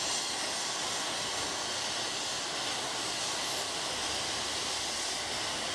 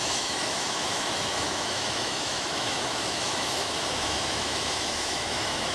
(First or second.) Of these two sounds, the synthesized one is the second